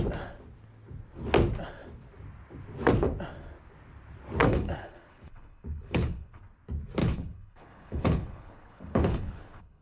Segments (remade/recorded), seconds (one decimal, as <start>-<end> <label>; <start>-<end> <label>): 0.0-4.4 recorded; 4.4-6.4 remade; 6.4-7.0 recorded; 7.0-9.8 remade